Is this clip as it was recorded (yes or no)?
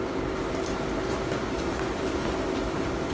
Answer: yes